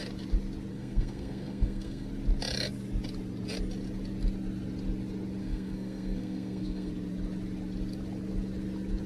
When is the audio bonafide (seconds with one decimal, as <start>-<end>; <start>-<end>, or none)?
0.0-0.7; 2.1-5.4; 6.9-9.1

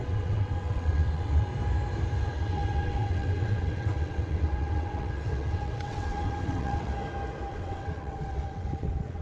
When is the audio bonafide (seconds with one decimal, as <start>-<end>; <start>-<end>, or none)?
1.5-2.2; 6.9-7.5

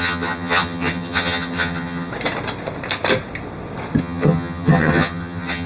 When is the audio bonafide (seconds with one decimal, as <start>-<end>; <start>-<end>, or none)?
2.1-4.0

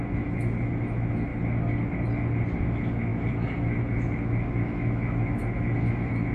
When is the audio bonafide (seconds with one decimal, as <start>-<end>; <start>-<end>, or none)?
1.3-2.7